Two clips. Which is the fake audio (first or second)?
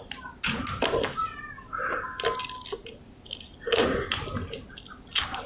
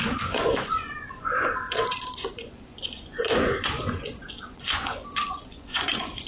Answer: second